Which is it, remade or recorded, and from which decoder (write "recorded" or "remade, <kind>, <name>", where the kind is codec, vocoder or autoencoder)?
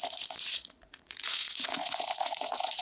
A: remade, vocoder, Vocos